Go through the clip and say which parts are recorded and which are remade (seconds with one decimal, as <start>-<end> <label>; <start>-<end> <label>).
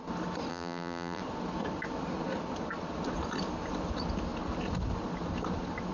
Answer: 0.0-0.5 recorded; 0.5-1.2 remade; 1.2-5.9 recorded